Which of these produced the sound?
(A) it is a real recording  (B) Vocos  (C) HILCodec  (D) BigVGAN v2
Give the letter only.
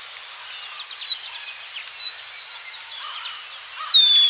A